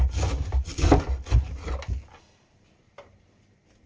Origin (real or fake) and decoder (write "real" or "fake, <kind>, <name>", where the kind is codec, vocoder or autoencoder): real